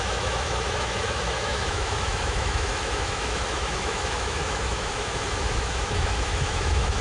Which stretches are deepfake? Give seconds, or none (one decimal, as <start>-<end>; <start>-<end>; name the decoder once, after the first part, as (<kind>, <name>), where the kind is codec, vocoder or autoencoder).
0.0-7.0 (autoencoder, DAC-VAE)